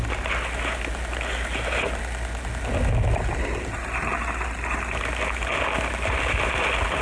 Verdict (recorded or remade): recorded